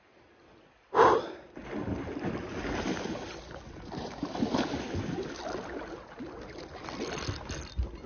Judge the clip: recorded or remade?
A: recorded